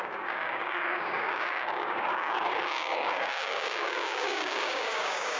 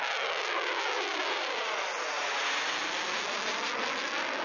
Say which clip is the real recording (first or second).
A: second